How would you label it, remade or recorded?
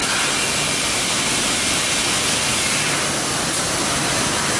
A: recorded